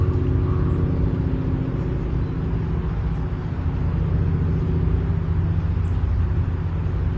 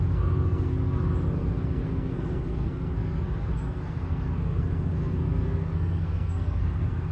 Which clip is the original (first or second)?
first